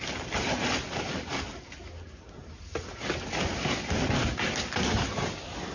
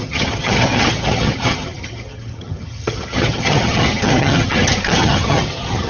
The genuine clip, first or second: first